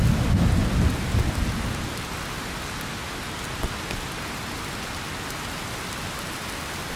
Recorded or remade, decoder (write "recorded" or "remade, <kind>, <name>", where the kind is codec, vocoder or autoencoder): recorded